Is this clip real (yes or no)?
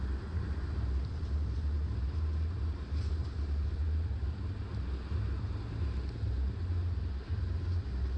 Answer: yes